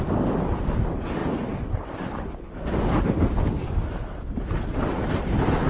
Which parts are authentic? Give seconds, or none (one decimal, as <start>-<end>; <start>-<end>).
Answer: 0.0-1.2; 4.6-5.7